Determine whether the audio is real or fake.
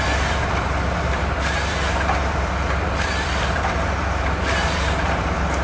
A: fake